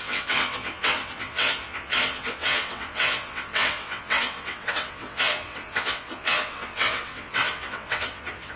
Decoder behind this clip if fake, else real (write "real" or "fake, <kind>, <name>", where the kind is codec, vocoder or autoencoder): fake, vocoder, WaveNeXt